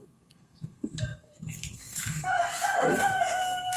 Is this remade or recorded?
remade